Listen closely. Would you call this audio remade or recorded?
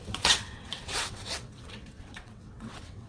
remade